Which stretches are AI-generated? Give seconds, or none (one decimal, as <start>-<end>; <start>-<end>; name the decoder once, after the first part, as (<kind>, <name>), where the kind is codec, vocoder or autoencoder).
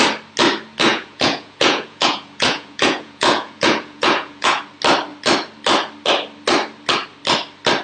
0.9-4.6 (vocoder, Vocos)